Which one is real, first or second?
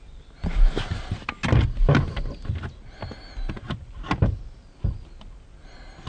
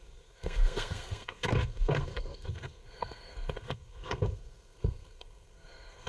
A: first